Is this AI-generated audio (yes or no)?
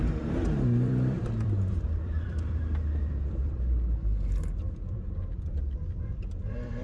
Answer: yes